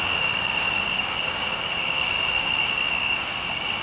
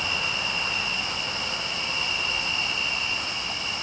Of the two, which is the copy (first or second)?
first